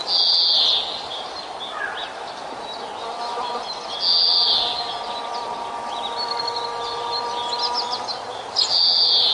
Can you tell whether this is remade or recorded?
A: recorded